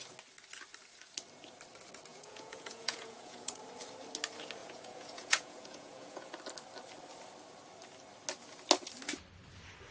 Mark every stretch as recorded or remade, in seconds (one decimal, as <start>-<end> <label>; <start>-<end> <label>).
0.0-2.1 recorded; 2.1-3.6 remade; 3.6-4.6 recorded; 4.6-6.3 remade; 6.3-9.9 recorded